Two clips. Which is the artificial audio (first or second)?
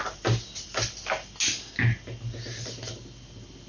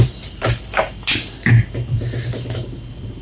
second